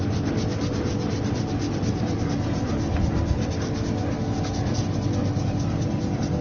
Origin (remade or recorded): recorded